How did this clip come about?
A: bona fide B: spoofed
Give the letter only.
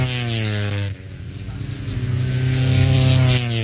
A